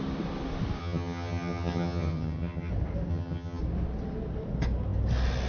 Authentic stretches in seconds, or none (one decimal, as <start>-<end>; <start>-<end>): 0.0-0.8; 2.7-3.1; 3.6-5.5